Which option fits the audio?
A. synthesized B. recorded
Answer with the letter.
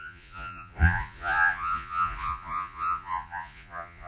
A